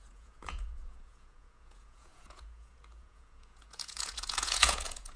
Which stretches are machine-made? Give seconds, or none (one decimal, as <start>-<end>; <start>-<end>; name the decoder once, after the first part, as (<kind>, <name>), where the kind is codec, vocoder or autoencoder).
0.0-5.2 (vocoder, Vocos)